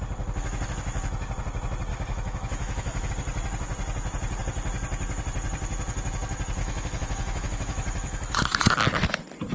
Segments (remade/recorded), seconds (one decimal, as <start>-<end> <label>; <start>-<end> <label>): 0.0-1.9 recorded; 1.9-3.1 remade; 3.1-6.6 recorded; 6.6-8.4 remade; 8.4-9.5 recorded